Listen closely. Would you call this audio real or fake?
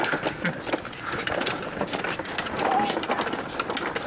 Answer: real